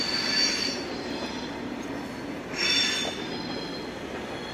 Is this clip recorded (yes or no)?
yes